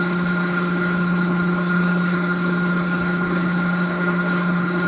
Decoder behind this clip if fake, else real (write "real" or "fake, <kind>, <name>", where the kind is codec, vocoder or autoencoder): fake, codec, HILCodec